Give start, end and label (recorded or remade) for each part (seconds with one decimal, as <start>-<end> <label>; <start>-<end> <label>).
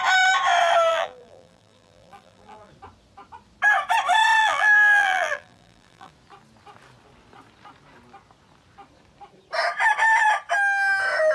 0.0-0.9 recorded; 0.9-2.7 remade; 2.7-4.4 recorded; 4.4-6.1 remade; 6.1-11.3 recorded